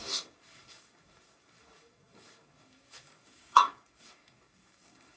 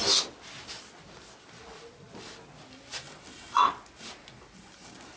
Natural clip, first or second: second